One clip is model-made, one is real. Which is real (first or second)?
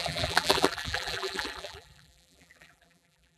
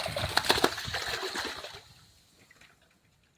second